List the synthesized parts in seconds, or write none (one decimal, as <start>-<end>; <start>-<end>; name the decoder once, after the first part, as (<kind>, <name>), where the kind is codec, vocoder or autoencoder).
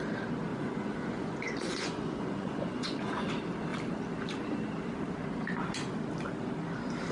0.5-3.3 (vocoder, Vocos)